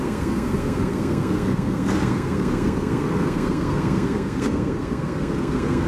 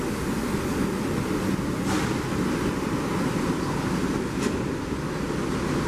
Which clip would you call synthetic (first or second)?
first